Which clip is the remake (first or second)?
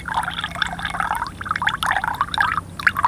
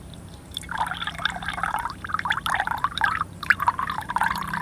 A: second